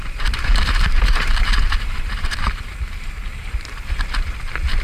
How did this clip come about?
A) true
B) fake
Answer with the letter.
B